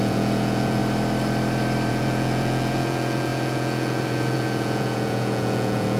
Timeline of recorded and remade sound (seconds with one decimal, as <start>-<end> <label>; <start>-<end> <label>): 0.0-0.8 remade; 0.8-1.9 recorded; 1.9-6.0 remade